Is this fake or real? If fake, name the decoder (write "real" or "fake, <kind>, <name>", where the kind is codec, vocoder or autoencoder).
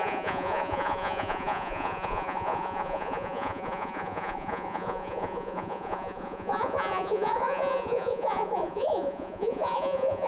fake, vocoder, Vocos